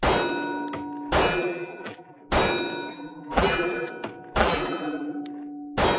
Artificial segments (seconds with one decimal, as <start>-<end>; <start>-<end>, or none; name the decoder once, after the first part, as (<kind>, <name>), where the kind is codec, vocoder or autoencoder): 1.3-2.2 (vocoder, BigVGAN v2); 2.9-3.9; 4.4-5.2